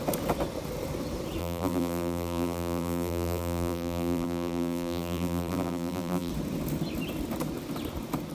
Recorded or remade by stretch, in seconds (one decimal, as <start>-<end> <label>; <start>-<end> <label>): 0.0-1.4 recorded; 1.4-6.3 remade; 6.3-8.3 recorded